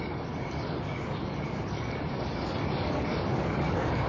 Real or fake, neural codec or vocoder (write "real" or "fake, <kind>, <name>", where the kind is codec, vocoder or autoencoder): fake, codec, DAC